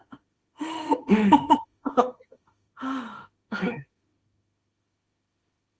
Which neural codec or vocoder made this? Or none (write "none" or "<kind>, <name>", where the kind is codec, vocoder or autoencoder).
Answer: autoencoder, DAC-VAE